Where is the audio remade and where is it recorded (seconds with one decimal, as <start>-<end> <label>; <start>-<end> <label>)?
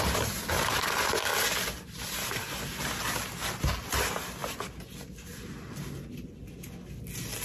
0.0-7.4 recorded